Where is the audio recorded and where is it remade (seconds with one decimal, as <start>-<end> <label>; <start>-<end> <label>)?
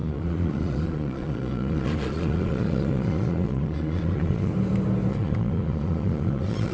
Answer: 0.0-4.5 remade; 4.5-5.1 recorded; 5.1-6.7 remade